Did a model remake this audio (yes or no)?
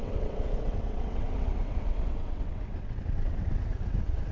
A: yes